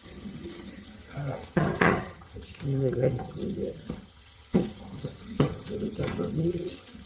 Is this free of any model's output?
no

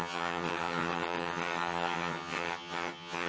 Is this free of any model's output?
no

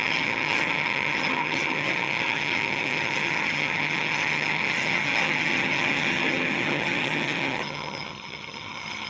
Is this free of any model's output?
no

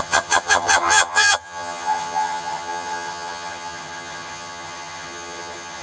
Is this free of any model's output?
no